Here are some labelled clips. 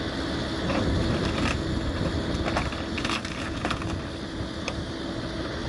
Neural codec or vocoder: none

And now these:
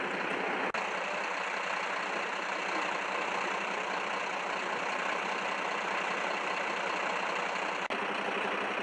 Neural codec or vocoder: none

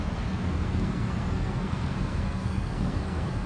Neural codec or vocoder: codec, SNAC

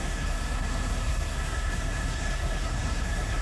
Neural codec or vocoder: codec, SNAC